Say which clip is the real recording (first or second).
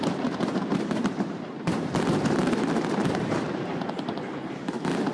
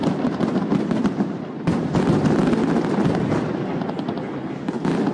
second